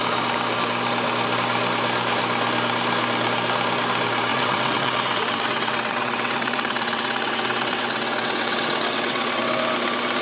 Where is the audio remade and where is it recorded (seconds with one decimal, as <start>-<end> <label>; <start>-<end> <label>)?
0.0-4.3 recorded; 4.3-9.4 remade; 9.4-10.2 recorded